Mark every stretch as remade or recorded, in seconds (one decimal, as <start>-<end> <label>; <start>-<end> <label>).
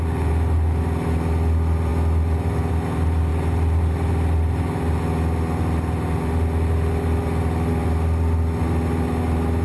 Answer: 0.0-9.6 recorded